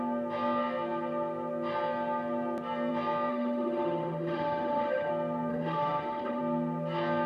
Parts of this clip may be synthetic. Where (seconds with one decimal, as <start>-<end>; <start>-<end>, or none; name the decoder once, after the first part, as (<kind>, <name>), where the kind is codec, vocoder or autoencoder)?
3.3-5.1 (autoencoder, DAC-VAE); 5.5-6.4